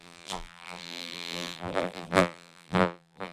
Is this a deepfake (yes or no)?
yes